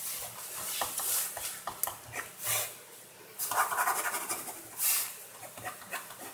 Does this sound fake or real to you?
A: real